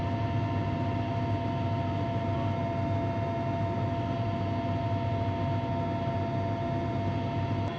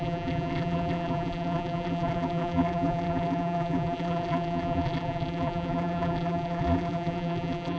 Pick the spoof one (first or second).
second